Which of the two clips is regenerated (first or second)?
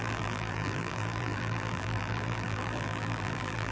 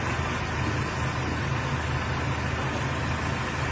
first